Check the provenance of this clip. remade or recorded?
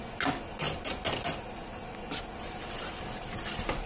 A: recorded